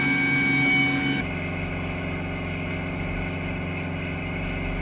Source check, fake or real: real